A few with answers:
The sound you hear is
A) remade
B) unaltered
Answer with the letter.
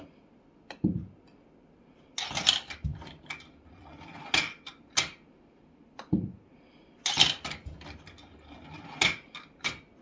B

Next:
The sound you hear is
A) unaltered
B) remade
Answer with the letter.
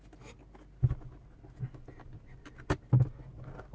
A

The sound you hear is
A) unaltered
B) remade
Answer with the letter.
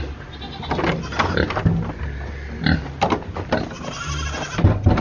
A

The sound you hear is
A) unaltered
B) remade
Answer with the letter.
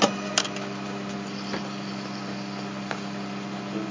A